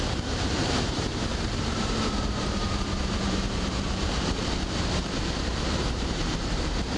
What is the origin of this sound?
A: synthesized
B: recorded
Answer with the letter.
A